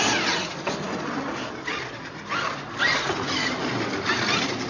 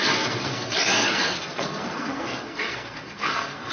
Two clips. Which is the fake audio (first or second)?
second